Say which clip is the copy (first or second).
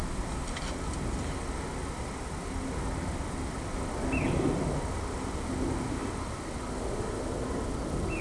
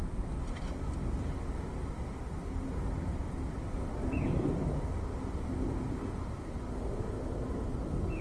second